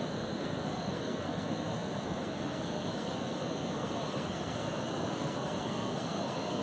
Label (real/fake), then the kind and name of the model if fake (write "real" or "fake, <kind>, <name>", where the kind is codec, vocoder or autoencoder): fake, codec, SNAC